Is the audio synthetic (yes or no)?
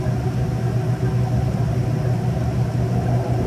no